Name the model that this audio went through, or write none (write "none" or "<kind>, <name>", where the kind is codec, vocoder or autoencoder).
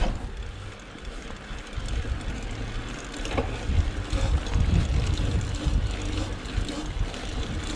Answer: none